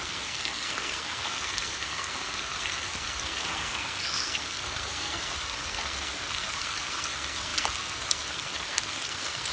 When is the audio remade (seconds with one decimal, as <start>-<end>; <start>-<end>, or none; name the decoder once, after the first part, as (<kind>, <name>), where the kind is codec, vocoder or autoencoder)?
0.0-9.5 (codec, SNAC)